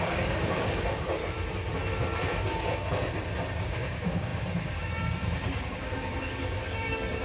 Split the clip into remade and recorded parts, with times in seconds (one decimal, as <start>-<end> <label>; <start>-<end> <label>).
0.0-1.2 remade; 1.2-3.6 recorded; 3.6-7.2 remade